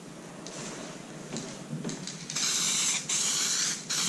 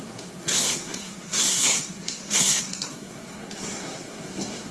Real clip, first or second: first